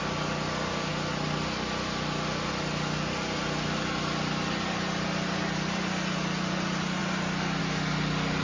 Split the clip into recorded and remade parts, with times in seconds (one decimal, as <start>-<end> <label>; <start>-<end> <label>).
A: 0.0-8.4 recorded